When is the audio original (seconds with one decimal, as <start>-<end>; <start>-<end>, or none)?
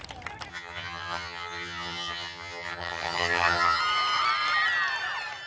0.0-0.5; 3.8-5.5